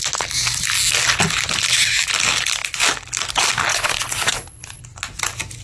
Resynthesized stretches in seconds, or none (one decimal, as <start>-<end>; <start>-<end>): 3.7-4.8